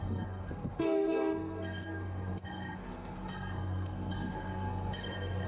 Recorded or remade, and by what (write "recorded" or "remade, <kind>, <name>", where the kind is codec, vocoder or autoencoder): remade, codec, SNAC